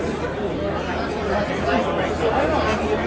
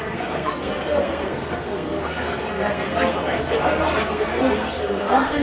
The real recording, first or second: first